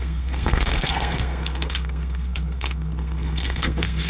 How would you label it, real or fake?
fake